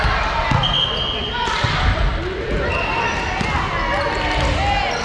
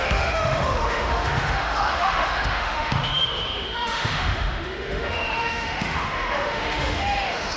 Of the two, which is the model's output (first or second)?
second